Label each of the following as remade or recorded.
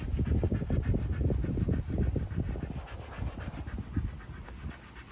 recorded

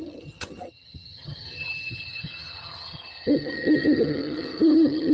remade